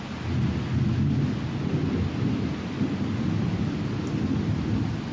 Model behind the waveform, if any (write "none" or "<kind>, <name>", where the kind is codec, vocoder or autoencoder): none